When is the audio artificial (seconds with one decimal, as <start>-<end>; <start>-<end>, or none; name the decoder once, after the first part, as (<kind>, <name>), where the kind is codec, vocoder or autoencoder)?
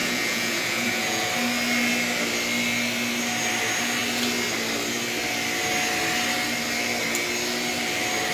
0.0-1.3 (vocoder, Vocos)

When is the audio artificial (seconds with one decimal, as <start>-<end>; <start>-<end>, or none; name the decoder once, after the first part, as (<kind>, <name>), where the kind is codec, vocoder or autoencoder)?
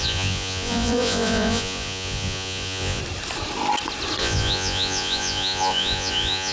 0.0-3.0 (vocoder, Vocos); 4.2-6.5